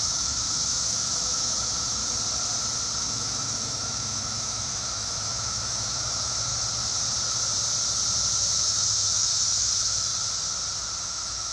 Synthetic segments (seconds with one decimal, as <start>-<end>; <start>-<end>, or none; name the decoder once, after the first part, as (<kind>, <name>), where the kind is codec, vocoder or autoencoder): 0.0-2.0 (autoencoder, DAC-VAE); 3.0-6.5; 8.4-10.1; 11.0-11.5